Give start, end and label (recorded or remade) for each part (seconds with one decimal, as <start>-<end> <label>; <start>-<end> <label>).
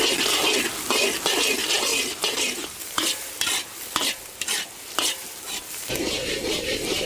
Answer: 0.0-1.9 recorded; 1.9-5.9 remade; 5.9-7.1 recorded